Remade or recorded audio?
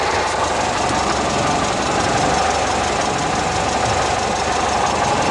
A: recorded